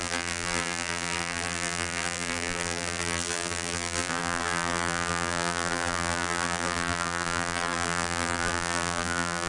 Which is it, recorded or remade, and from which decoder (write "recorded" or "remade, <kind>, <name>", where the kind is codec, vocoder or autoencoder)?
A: remade, vocoder, BigVGAN v2